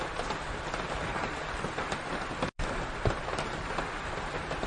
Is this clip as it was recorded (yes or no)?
yes